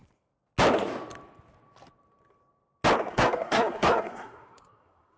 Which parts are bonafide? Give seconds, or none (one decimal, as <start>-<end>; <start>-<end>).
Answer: 0.0-3.1